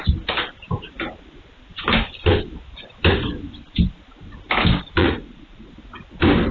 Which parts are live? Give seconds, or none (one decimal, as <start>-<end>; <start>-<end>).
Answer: 0.0-5.0; 5.7-6.5

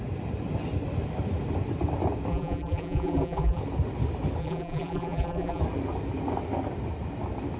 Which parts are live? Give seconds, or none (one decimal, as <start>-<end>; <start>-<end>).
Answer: 0.0-2.3; 3.6-4.4; 5.6-7.6

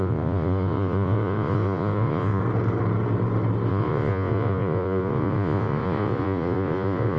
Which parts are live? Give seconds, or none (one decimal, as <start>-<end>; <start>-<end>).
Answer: 2.4-3.7

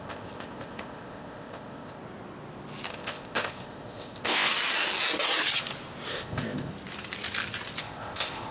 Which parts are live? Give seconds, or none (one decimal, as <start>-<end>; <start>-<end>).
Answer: 2.0-2.9; 4.5-6.1; 6.7-7.8

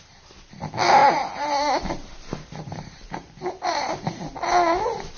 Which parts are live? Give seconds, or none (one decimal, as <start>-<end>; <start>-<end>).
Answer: 0.0-1.0; 4.1-5.2

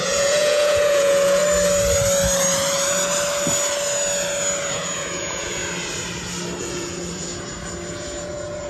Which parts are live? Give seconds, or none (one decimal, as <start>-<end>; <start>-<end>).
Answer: 1.4-4.7; 5.6-6.6; 7.3-7.9

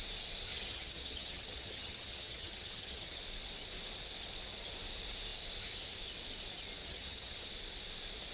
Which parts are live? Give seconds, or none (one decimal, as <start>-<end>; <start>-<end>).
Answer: 0.0-0.5; 3.2-6.8; 7.5-8.3